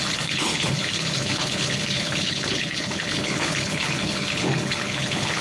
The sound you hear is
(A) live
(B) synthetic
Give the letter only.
B